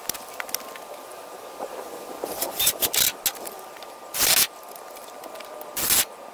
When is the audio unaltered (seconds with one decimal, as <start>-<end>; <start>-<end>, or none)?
0.0-6.3